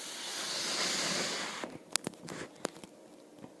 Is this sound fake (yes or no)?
no